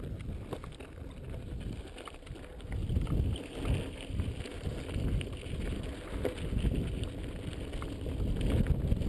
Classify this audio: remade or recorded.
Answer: recorded